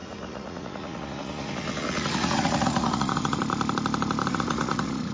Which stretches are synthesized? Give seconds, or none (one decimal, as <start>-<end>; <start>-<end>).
0.0-3.4; 4.3-5.1